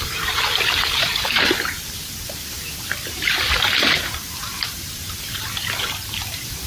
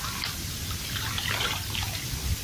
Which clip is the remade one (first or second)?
first